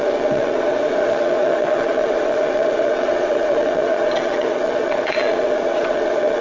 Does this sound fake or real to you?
fake